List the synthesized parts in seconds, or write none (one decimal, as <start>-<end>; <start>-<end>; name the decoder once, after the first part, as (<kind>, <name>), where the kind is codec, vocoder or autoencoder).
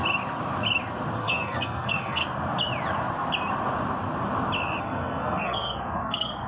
1.2-2.2 (codec, SNAC); 4.8-6.5